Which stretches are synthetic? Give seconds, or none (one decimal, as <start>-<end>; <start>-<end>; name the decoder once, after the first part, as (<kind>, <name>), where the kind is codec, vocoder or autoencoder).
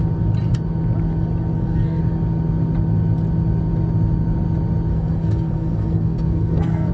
1.5-2.0 (codec, SNAC); 4.9-6.9